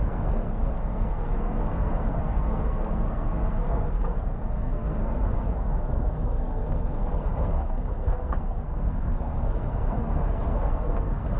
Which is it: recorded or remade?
remade